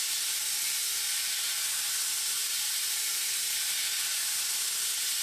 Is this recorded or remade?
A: recorded